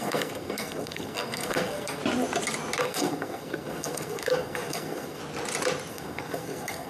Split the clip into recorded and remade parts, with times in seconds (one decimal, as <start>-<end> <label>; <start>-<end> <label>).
0.0-2.0 remade; 2.0-2.8 recorded; 2.8-5.2 remade; 5.2-5.9 recorded; 5.9-6.9 remade